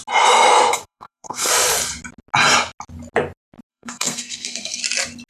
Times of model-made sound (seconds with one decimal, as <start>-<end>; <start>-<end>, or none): 0.7-1.5; 3.7-4.8